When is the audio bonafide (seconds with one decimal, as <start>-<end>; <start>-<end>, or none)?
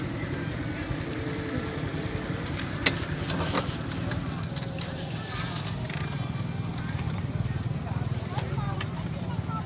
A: 0.0-9.7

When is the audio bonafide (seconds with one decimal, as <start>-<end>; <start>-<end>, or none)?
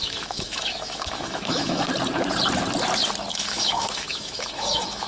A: 1.9-3.3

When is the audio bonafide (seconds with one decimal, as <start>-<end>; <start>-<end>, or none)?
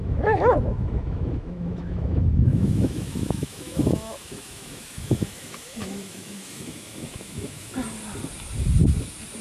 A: 7.7-9.4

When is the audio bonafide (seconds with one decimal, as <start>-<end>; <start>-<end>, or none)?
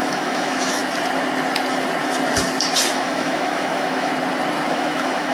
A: 0.8-2.9; 4.1-4.7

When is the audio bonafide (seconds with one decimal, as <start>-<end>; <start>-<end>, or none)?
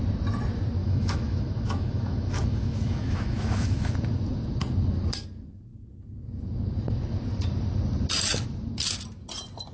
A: 0.0-0.8; 3.9-9.7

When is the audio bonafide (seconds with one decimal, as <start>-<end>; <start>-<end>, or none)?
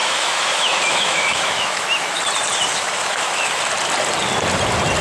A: 2.2-2.7; 3.6-5.0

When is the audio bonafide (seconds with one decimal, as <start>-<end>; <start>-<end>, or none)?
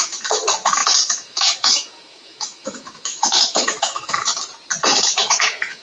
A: 4.3-4.8